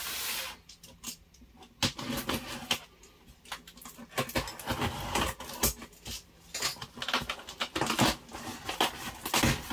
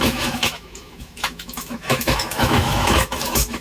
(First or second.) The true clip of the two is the first